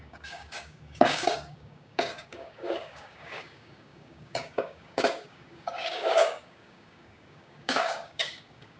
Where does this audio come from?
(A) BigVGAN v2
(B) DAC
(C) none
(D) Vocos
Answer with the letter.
B